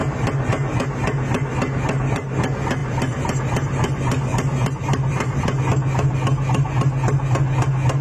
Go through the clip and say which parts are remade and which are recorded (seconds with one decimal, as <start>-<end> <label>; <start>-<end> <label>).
0.0-2.8 recorded; 2.8-5.6 remade; 5.6-8.0 recorded